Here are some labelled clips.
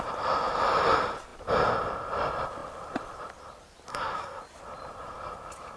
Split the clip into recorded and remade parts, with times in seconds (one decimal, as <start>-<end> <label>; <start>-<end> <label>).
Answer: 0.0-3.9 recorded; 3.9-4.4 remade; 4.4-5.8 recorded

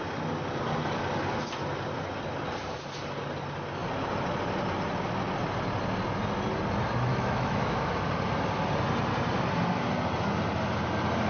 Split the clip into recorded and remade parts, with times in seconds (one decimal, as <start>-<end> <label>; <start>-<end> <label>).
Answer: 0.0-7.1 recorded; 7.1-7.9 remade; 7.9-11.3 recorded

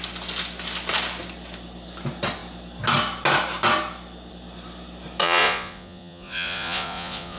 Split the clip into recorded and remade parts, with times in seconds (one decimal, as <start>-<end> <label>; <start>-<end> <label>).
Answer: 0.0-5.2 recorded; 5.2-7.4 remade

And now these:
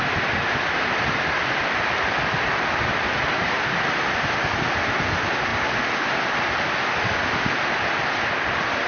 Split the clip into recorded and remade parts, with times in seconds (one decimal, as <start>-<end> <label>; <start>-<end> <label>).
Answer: 0.0-8.9 recorded

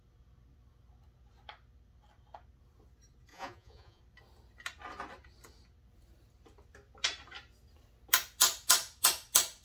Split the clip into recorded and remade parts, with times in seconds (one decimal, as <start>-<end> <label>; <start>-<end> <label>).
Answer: 0.0-3.3 recorded; 3.3-4.0 remade; 4.0-9.6 recorded

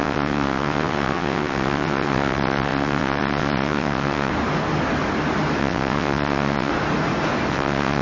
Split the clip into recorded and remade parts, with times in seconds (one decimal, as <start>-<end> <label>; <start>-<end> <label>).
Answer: 0.0-4.3 remade; 4.3-5.6 recorded; 5.6-6.7 remade; 6.7-7.5 recorded; 7.5-8.0 remade

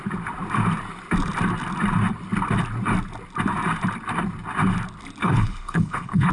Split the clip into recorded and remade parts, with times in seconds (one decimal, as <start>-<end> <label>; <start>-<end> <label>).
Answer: 0.0-5.2 recorded; 5.2-6.3 remade